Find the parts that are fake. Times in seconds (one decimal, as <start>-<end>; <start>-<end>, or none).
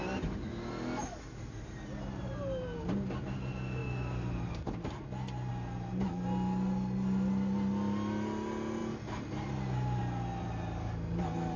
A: none